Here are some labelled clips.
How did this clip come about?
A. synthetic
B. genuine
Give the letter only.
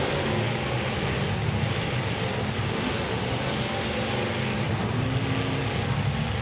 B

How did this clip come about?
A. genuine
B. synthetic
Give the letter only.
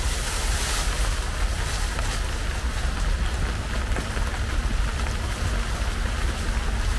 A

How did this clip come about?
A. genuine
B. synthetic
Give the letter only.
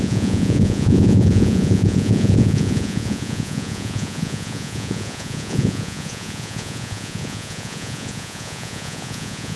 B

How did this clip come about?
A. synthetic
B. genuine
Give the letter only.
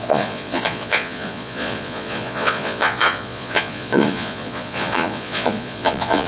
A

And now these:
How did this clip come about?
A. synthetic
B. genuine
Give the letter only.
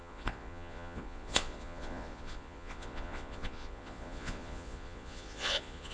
A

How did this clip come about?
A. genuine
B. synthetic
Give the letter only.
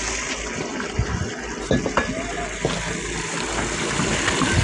A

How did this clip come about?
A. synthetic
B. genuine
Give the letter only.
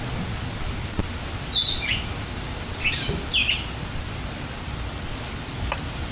B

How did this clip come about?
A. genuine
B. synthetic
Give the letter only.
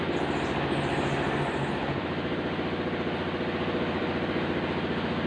A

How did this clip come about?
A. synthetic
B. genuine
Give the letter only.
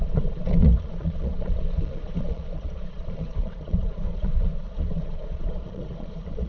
A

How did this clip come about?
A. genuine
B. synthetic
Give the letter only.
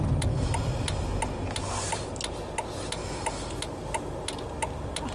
A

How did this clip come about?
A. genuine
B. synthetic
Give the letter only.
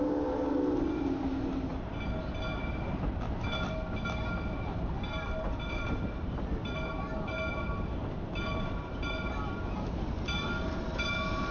A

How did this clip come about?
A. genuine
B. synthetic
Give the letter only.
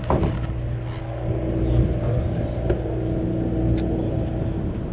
A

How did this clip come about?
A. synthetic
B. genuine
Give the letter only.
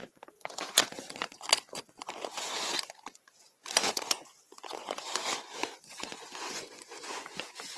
A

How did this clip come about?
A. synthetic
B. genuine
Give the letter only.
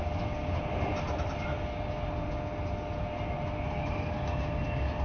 B